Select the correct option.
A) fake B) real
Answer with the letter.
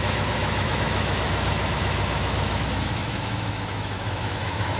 A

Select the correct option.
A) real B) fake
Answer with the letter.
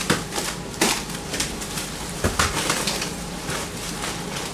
A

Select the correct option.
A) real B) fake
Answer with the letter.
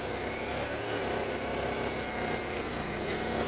A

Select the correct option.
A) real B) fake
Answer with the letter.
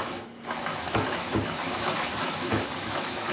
B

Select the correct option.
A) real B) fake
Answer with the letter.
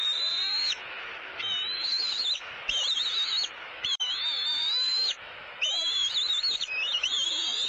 B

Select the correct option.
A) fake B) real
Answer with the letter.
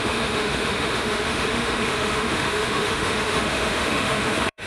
A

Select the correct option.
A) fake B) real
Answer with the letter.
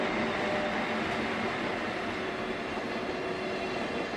B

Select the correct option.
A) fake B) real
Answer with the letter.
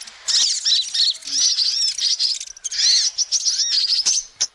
B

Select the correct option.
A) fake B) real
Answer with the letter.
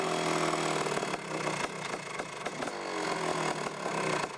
B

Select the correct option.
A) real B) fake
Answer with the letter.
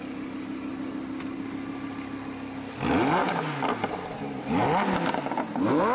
A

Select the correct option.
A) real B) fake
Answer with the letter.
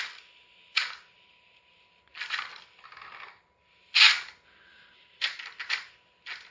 A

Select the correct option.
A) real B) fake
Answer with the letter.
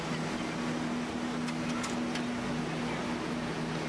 A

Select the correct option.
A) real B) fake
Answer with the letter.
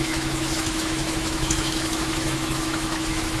B